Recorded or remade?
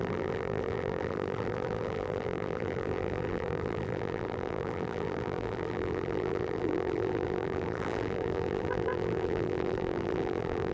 remade